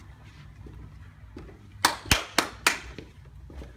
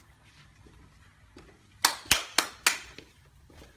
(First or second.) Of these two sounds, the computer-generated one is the second